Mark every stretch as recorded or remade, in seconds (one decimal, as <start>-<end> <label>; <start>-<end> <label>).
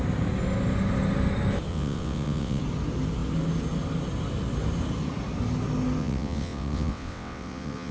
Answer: 0.0-1.7 recorded; 1.7-2.6 remade; 2.6-6.0 recorded; 6.0-7.9 remade